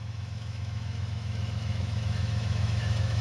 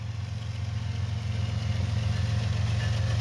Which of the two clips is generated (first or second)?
first